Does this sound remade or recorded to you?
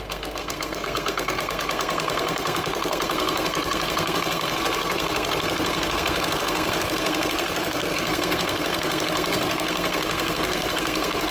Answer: remade